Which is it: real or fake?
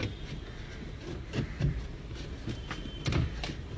real